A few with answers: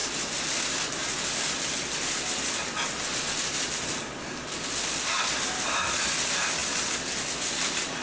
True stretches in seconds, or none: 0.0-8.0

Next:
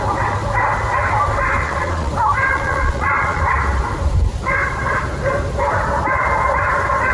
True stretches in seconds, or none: 0.0-1.6; 2.1-2.5; 3.4-7.1

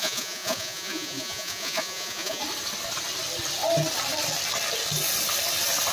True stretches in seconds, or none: 2.4-5.9

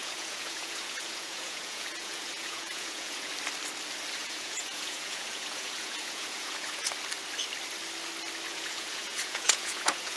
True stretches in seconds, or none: 3.3-4.2; 6.9-8.5

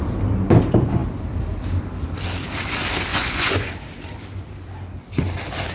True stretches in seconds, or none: 0.0-3.1; 3.7-5.7

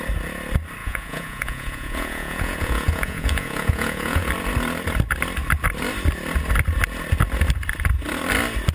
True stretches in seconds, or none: 0.0-0.8; 4.3-8.7

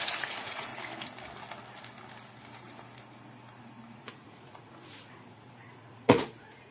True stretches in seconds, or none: 0.7-4.0